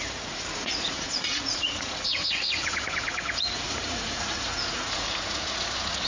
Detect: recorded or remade remade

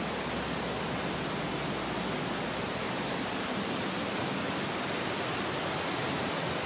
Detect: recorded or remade recorded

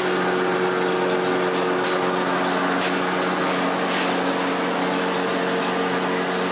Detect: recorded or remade recorded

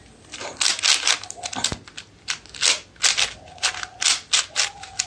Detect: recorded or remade recorded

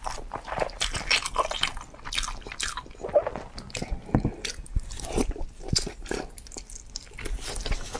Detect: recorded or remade recorded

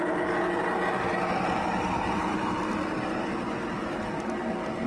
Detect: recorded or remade recorded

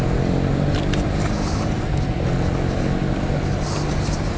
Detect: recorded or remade recorded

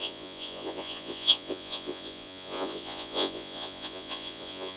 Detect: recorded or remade remade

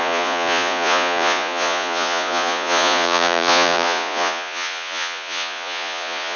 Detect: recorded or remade remade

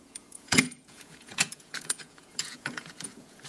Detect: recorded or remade remade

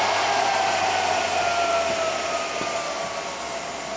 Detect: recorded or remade recorded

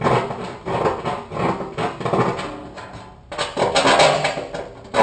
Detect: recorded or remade recorded